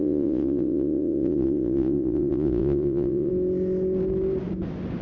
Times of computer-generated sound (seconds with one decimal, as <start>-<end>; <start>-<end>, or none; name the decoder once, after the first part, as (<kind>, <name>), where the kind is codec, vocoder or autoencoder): 0.0-3.3 (vocoder, Vocos)